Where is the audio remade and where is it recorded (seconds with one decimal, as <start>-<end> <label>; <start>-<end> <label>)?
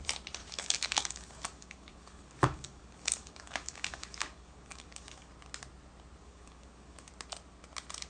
0.0-0.4 recorded; 0.4-5.3 remade; 5.3-6.2 recorded; 6.2-7.1 remade; 7.1-8.1 recorded